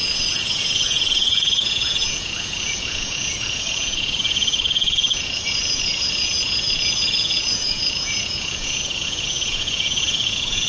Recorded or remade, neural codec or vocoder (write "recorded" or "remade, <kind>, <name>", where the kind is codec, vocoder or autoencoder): remade, vocoder, Vocos